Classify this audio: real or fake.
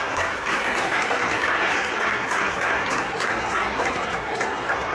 fake